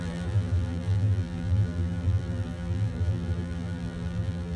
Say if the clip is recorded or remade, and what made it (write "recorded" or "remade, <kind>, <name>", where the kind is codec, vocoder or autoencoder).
remade, vocoder, BigVGAN v2